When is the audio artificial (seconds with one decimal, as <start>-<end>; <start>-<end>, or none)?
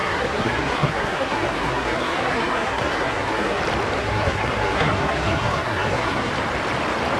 0.0-3.6; 4.0-6.3